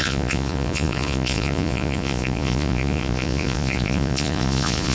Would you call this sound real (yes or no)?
no